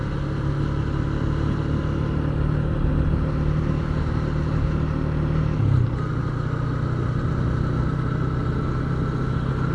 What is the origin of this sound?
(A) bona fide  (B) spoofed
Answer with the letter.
A